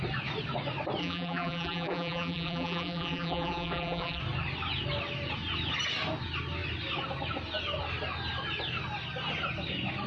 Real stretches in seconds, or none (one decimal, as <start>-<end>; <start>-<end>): 0.0-1.0; 4.2-10.1